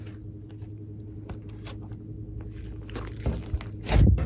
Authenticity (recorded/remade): recorded